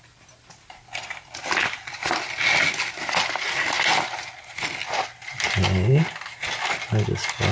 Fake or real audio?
real